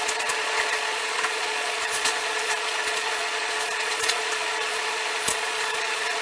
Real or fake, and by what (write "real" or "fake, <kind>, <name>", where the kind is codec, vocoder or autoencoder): fake, vocoder, Vocos